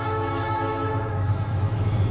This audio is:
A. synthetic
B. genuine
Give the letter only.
A